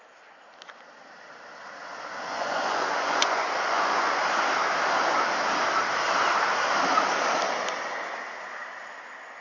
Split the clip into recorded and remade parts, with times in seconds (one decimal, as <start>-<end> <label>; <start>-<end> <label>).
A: 0.0-2.3 recorded; 2.3-4.2 remade; 4.2-9.4 recorded